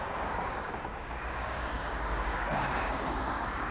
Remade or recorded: remade